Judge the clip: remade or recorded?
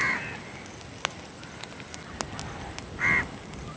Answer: recorded